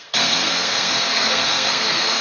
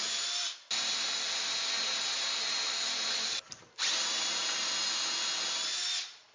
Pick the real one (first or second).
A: second